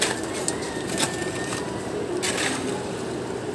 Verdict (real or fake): real